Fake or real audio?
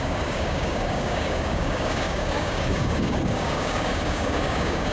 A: fake